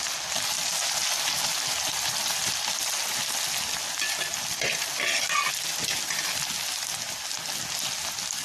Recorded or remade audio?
recorded